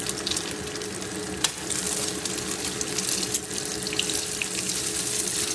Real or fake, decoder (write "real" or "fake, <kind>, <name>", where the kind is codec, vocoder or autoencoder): real